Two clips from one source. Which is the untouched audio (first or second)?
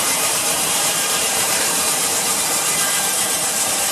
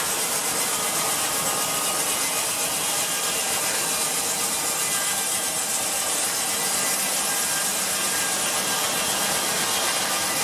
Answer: second